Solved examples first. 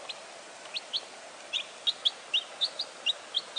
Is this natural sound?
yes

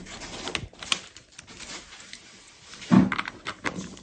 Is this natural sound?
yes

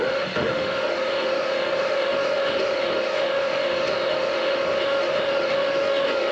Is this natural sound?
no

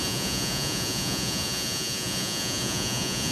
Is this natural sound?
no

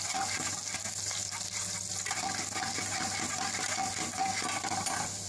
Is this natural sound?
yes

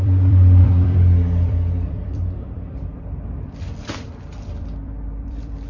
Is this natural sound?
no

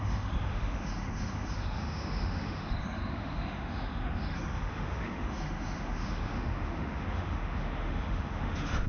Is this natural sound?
no